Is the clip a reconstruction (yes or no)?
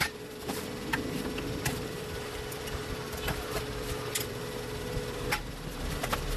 yes